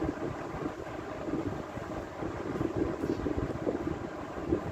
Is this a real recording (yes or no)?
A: no